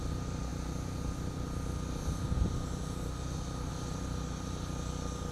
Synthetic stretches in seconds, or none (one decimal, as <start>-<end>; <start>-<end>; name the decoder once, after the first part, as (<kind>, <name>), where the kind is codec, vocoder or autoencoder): none